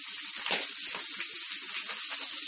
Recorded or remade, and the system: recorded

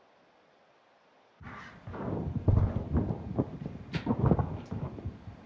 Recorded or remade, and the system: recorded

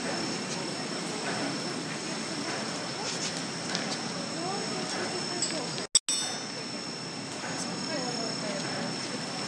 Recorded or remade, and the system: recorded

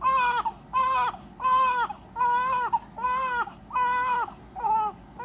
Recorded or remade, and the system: recorded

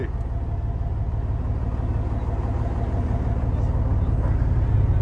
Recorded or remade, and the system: recorded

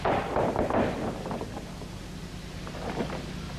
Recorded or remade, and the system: recorded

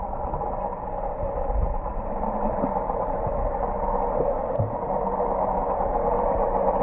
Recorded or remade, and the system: recorded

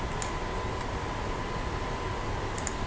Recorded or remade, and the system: recorded